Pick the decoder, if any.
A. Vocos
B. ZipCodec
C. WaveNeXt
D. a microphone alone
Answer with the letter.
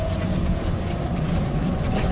A